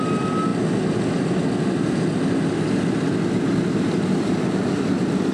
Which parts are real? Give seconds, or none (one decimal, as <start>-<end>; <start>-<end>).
0.0-5.3